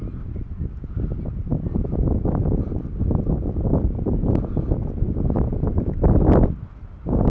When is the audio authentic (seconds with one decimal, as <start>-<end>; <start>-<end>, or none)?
0.0-7.3